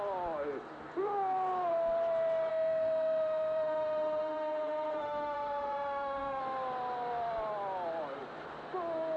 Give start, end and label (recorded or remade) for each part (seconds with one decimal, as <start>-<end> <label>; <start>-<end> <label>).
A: 0.0-2.5 recorded; 2.5-6.4 remade; 6.4-9.2 recorded